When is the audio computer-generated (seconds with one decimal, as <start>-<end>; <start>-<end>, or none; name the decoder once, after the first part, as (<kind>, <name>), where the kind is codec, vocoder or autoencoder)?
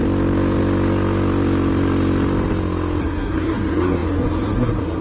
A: 3.0-5.0 (codec, SNAC)